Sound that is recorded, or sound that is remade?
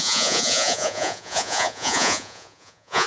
remade